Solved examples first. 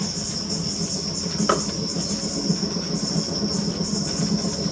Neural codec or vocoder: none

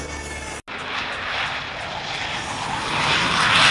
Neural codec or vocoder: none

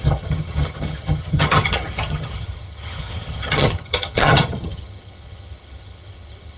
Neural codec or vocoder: vocoder, HiFi-GAN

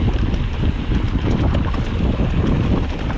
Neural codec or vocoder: none